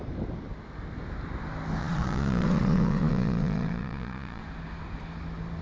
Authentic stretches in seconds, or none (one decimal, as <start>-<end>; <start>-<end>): 0.0-1.8; 4.4-5.6